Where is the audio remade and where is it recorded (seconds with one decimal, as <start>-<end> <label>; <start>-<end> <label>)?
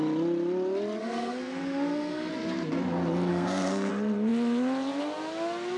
0.0-1.0 recorded; 1.0-2.3 remade; 2.3-3.3 recorded; 3.3-3.9 remade; 3.9-5.8 recorded